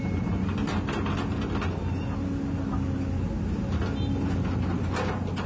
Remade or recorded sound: recorded